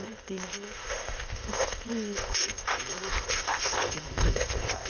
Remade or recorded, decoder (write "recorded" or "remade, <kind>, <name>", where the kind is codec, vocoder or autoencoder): remade, codec, ZipCodec